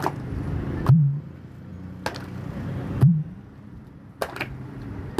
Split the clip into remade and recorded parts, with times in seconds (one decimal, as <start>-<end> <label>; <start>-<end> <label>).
0.0-5.2 recorded